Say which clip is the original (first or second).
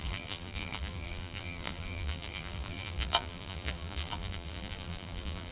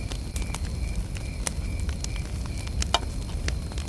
second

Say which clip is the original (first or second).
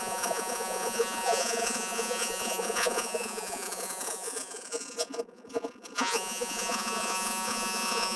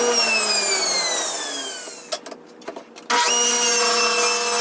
second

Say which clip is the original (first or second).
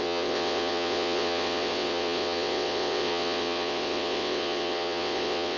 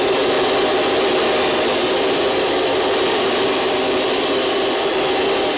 second